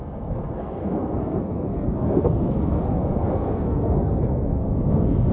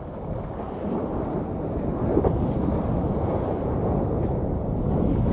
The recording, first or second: second